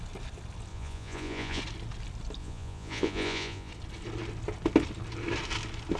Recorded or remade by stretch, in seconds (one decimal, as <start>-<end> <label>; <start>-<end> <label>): 0.0-0.7 recorded; 0.7-1.6 remade; 1.6-2.4 recorded; 2.4-3.7 remade; 3.7-6.0 recorded